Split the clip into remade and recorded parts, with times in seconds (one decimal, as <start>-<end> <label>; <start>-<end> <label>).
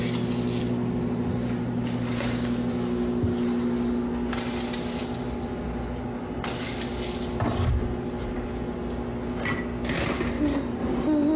0.0-11.4 recorded